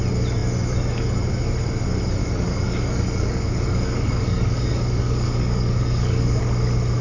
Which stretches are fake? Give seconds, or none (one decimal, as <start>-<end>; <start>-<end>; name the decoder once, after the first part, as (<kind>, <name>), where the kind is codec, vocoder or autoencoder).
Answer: 2.2-6.4 (codec, DAC)